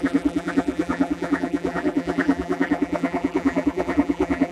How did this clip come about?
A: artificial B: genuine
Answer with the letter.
A